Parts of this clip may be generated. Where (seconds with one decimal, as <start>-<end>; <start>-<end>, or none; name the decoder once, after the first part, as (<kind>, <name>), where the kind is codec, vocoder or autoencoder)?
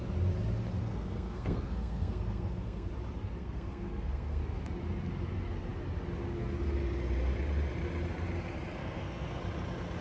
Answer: 0.8-2.9 (codec, SNAC); 3.4-4.4; 8.8-9.4